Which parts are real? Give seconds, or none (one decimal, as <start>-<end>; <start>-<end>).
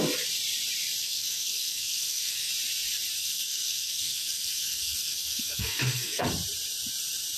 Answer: 0.0-1.0; 2.5-3.2; 6.3-7.4